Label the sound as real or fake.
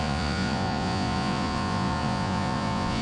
fake